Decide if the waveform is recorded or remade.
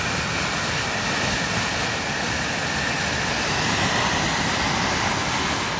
recorded